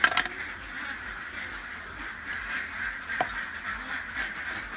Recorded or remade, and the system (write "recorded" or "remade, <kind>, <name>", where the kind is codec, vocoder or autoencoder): recorded